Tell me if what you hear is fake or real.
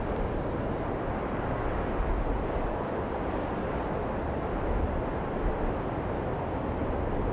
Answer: real